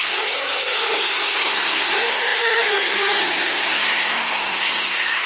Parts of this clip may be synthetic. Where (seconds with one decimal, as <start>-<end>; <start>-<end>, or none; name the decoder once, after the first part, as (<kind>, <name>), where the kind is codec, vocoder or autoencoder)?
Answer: 0.0-5.3 (codec, SNAC)